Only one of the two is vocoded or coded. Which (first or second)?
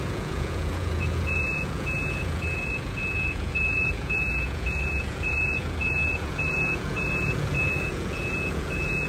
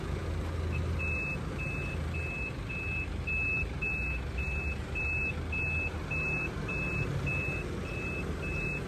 first